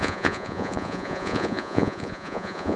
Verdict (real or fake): fake